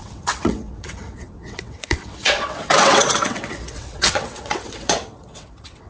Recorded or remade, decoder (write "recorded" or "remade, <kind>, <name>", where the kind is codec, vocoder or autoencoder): remade, vocoder, WaveNeXt